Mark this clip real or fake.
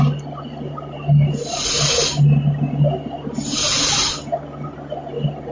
real